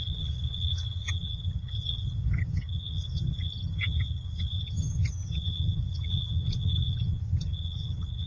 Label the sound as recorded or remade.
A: remade